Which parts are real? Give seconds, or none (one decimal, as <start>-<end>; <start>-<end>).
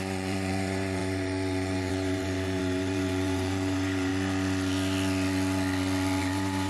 4.1-6.2